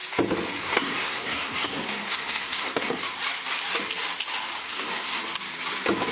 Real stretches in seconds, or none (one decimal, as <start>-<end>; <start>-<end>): 0.0-0.6; 3.0-4.6; 5.2-6.1